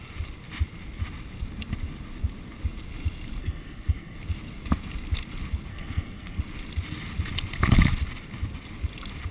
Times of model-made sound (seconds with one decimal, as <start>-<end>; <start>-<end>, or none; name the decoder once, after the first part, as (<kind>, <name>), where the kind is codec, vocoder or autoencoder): 3.4-4.2 (codec, SNAC); 5.7-6.4